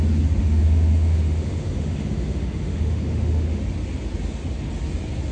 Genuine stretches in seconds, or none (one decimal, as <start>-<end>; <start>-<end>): 0.0-0.4; 3.6-5.3